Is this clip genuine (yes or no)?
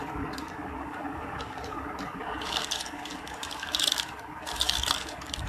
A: no